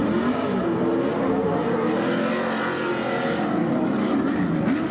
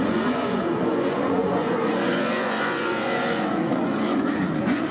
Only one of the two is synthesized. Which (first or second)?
second